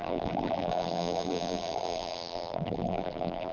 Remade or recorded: remade